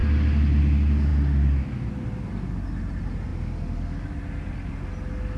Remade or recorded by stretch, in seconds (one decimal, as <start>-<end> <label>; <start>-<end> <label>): 0.0-5.4 recorded